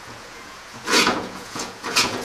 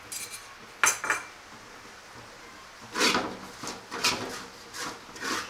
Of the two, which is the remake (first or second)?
first